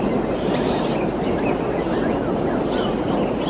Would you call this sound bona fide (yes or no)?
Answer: yes